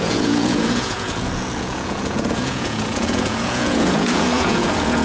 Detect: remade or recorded remade